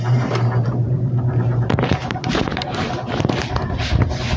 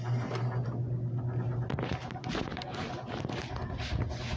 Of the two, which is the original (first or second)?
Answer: second